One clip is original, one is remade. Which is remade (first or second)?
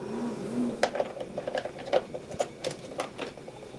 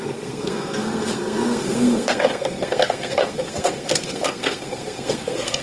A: second